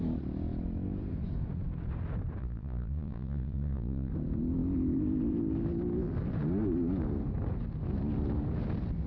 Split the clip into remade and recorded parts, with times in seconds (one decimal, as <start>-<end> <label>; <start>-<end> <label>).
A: 0.0-2.4 recorded; 2.4-4.1 remade; 4.1-9.1 recorded